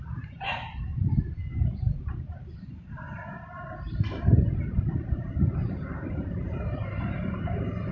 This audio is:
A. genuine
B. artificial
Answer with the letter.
B